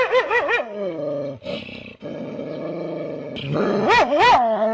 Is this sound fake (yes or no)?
no